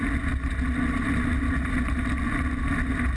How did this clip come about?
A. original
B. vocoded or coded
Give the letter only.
A